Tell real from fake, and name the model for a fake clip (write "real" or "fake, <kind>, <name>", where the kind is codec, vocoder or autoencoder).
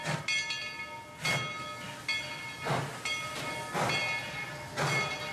real